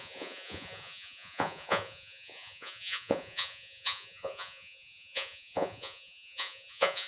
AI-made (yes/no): yes